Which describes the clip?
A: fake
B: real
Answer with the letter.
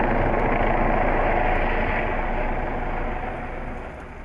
B